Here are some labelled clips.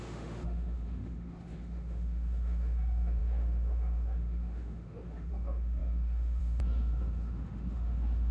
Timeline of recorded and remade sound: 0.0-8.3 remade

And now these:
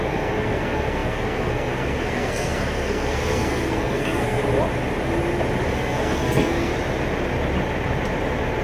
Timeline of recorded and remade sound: 0.0-4.4 remade; 4.4-5.7 recorded; 5.7-6.7 remade; 6.7-8.6 recorded

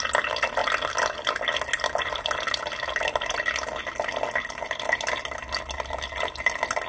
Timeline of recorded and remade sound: 0.0-6.9 recorded